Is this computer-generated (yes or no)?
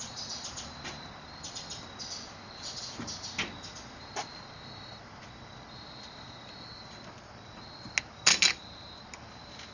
no